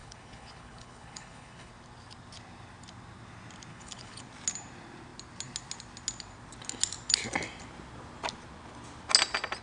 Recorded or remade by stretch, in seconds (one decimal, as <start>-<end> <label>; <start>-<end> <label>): 0.0-1.7 remade; 1.7-3.7 recorded; 3.7-4.2 remade; 4.2-9.6 recorded